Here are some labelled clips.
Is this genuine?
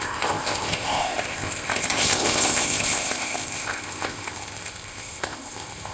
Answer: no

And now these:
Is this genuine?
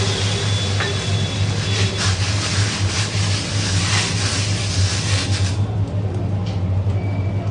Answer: yes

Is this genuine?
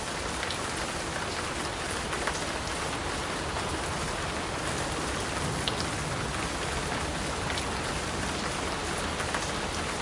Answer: yes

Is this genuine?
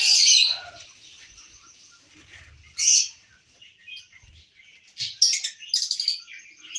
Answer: yes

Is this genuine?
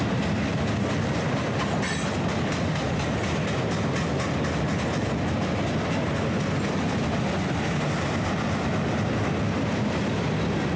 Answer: yes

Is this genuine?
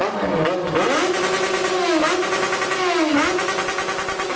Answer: yes